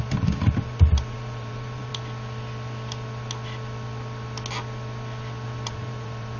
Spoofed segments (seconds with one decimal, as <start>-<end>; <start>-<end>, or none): 0.0-1.9; 5.7-6.4